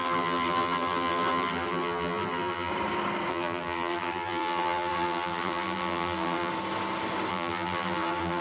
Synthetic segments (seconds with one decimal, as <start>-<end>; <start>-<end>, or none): 0.0-2.7; 3.3-6.5; 7.3-8.4